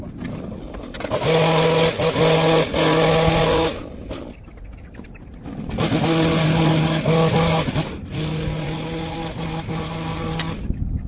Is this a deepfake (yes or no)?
no